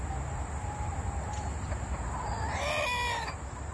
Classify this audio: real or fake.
real